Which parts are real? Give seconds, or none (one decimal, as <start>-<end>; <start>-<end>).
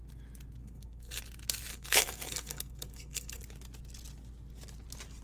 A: 0.0-0.6; 1.2-1.7; 3.4-5.2